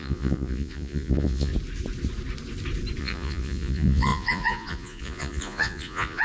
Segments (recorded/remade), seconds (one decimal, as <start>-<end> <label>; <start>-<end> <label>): 0.0-1.5 remade; 1.5-3.0 recorded; 3.0-6.2 remade